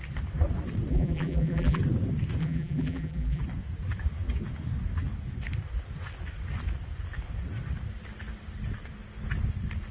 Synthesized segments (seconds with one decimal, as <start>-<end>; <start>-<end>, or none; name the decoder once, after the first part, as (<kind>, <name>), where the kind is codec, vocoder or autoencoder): 0.9-1.8 (vocoder, BigVGAN v2); 2.4-3.4